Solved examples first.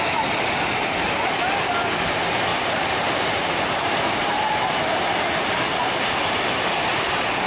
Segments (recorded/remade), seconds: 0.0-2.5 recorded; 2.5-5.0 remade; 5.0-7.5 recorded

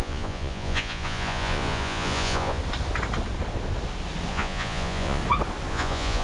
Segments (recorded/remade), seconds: 0.0-2.6 remade; 2.6-4.3 recorded; 4.3-5.2 remade; 5.2-5.7 recorded; 5.7-6.2 remade

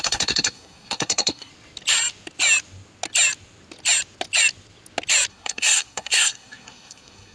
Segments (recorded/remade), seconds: 0.0-1.5 remade; 1.5-5.3 recorded; 5.3-7.3 remade

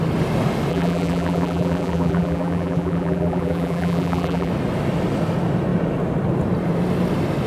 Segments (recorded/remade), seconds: 0.0-0.7 recorded; 0.7-4.5 remade; 4.5-7.5 recorded

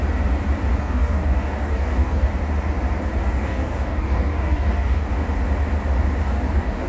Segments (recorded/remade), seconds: 0.0-0.8 recorded; 0.8-2.3 remade; 2.3-3.2 recorded; 3.2-5.1 remade; 5.1-6.2 recorded; 6.2-6.9 remade

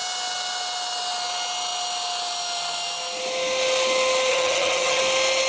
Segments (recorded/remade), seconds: 0.0-4.3 recorded; 4.3-5.0 remade; 5.0-5.5 recorded

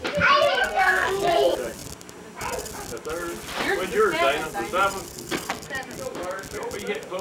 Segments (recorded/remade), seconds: 0.0-0.6 recorded; 0.6-1.3 remade; 1.3-5.1 recorded; 5.1-5.7 remade; 5.7-7.2 recorded

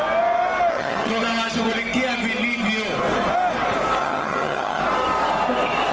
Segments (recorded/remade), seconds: 0.0-0.7 recorded; 0.7-1.2 remade; 1.2-4.0 recorded; 4.0-4.8 remade; 4.8-5.9 recorded